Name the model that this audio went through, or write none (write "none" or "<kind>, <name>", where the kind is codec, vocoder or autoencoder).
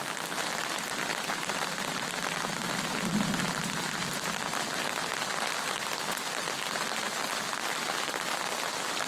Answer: none